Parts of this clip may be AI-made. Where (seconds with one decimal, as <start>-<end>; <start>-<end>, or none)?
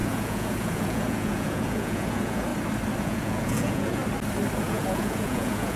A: 0.0-2.5; 3.0-4.0; 4.6-5.8